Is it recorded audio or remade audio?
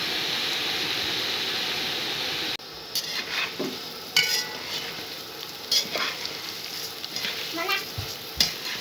recorded